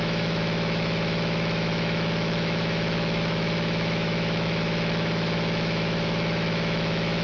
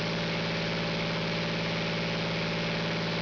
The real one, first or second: second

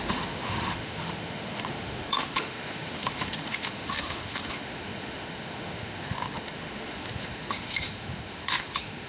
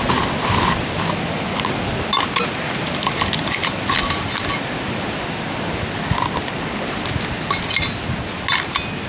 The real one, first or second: second